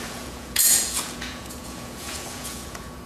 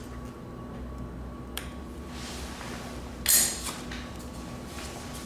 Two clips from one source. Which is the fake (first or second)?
first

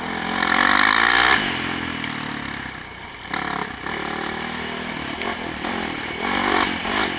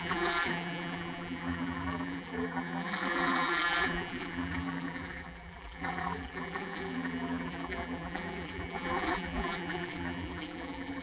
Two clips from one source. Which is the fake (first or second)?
second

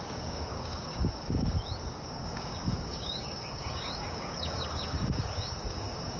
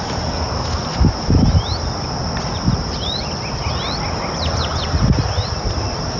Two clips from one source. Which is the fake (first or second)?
first